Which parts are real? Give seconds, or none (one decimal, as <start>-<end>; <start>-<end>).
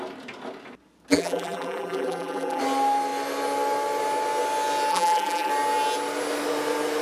0.0-1.1; 2.6-4.9; 5.5-7.0